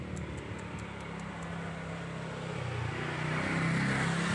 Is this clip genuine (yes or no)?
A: yes